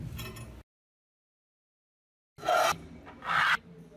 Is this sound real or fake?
real